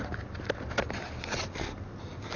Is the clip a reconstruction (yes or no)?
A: no